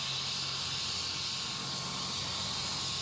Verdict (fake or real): real